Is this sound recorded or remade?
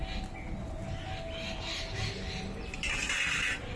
recorded